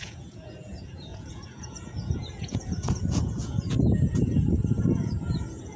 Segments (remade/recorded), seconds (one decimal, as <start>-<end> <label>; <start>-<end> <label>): 0.0-5.8 remade